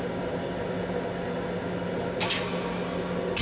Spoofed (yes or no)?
no